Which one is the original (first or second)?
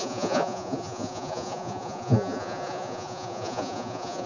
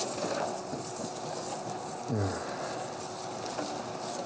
second